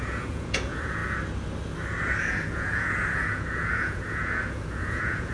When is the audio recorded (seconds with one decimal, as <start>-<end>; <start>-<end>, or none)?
1.0-2.2